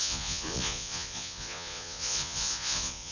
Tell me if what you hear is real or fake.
fake